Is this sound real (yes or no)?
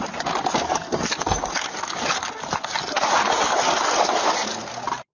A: yes